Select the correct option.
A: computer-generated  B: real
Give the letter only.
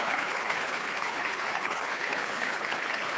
A